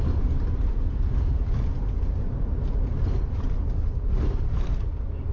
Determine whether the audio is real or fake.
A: real